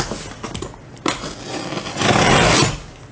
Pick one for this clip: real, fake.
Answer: real